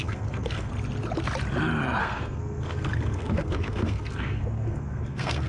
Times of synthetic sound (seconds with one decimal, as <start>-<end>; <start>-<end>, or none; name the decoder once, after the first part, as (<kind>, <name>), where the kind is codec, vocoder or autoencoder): 0.0-0.7 (codec, SNAC); 2.0-5.5